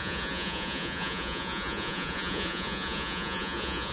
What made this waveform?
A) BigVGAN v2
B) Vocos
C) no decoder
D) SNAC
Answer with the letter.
B